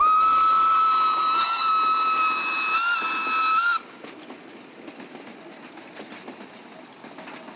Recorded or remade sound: recorded